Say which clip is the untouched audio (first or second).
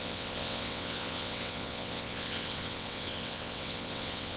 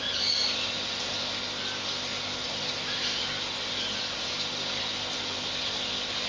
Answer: second